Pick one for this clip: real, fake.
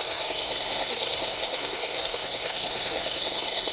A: fake